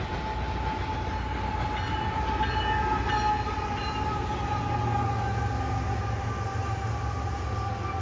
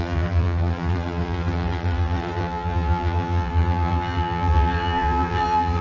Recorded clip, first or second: first